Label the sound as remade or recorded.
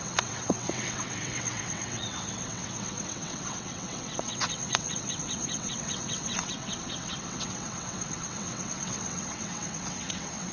remade